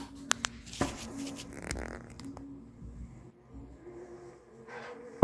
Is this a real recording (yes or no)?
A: yes